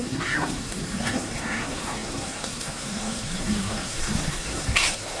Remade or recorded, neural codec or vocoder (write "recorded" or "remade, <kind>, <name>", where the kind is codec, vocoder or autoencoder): remade, codec, SNAC